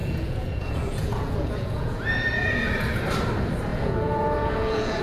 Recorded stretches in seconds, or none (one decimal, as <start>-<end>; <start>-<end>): 3.0-3.7